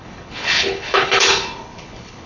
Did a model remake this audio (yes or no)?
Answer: yes